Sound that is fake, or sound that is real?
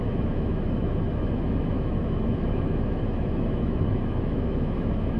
fake